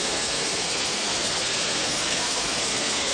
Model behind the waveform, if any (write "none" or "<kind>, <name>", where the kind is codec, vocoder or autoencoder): codec, SNAC